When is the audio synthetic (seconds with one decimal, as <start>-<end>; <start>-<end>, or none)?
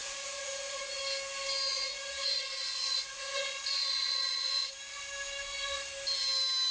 0.0-1.0; 1.7-4.7